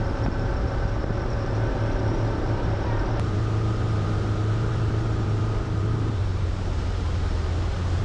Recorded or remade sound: remade